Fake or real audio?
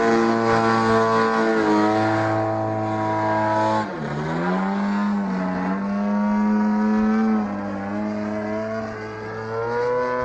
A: real